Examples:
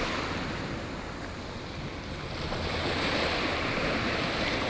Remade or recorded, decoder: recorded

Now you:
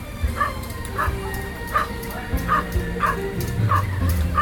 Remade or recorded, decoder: remade, vocoder, BigVGAN v2